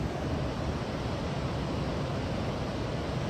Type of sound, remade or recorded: recorded